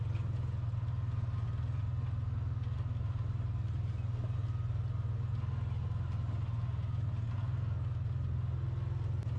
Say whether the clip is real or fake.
real